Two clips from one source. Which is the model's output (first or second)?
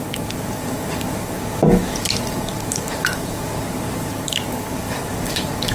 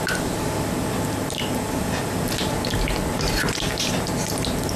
first